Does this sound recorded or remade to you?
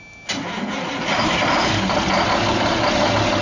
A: recorded